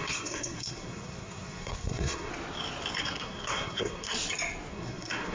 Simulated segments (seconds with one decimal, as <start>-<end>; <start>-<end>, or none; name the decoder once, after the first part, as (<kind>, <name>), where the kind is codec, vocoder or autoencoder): 0.0-2.3 (codec, SNAC); 3.0-4.1; 4.7-5.3